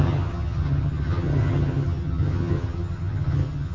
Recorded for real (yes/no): no